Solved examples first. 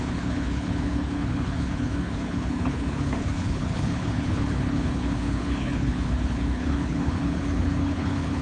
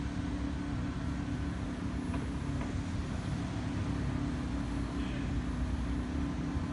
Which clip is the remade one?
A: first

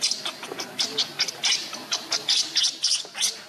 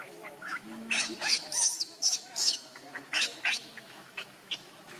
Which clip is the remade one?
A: second